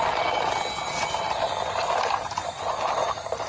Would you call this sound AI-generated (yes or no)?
no